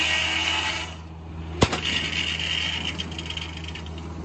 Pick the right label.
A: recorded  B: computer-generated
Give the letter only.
A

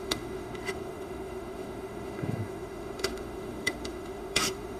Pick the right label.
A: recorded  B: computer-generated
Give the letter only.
B